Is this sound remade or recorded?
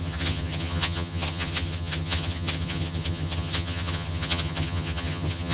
remade